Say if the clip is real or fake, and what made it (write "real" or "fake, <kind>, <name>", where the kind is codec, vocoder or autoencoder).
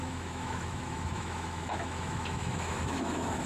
fake, autoencoder, DAC-VAE